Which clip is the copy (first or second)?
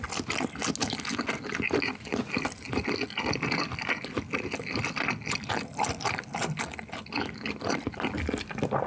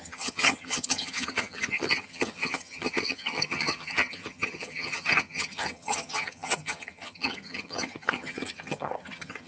second